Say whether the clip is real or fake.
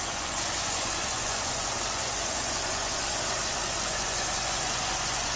fake